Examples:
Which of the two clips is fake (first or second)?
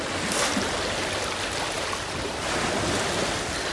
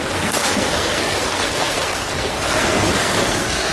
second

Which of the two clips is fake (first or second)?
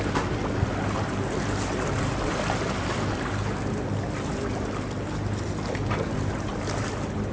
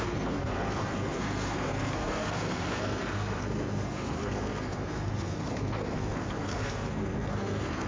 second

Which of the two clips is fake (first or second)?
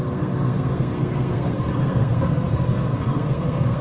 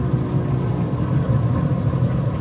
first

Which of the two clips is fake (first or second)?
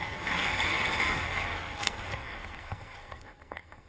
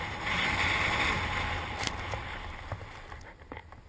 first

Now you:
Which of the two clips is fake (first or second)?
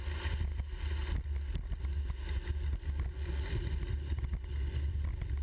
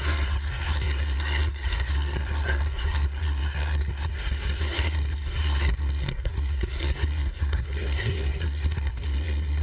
second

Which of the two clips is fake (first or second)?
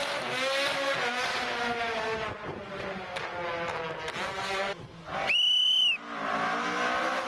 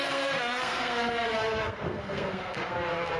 second